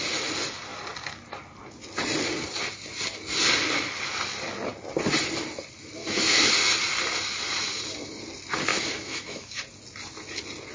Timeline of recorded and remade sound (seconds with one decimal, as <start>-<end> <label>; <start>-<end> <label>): 0.0-6.0 recorded; 6.0-6.5 remade; 6.5-8.7 recorded; 8.7-9.6 remade; 9.6-10.7 recorded